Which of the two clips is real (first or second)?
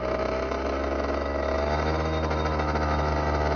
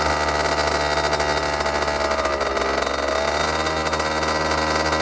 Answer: second